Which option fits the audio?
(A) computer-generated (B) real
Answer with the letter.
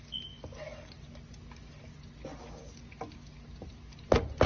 B